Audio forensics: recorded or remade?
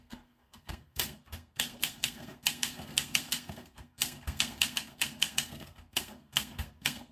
remade